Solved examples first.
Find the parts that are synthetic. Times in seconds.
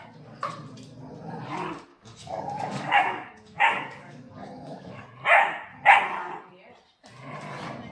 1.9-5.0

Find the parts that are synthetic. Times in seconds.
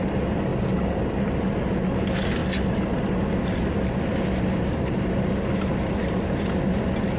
none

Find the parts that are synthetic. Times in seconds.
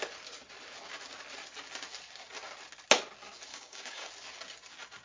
3.5-4.1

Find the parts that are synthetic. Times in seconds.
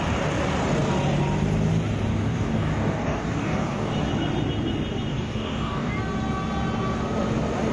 2.1-3.9; 5.1-5.9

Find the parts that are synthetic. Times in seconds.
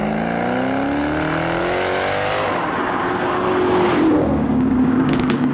4.3-5.5